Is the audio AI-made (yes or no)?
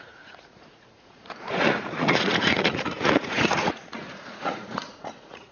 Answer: yes